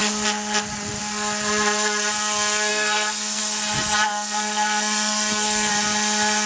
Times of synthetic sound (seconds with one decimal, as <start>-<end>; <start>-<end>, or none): 2.7-3.4; 4.1-5.7